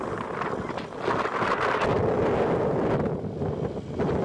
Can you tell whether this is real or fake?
real